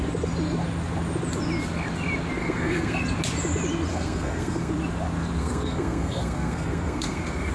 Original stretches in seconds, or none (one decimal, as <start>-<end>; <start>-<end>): 0.0-2.4; 3.0-3.9; 4.7-5.4